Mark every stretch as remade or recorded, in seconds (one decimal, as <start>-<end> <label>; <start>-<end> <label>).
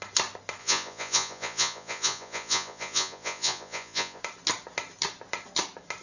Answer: 0.0-0.6 recorded; 0.6-4.2 remade; 4.2-6.0 recorded